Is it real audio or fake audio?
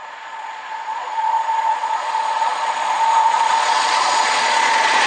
fake